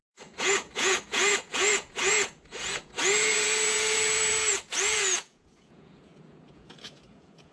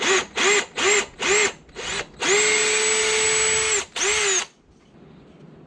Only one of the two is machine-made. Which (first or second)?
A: first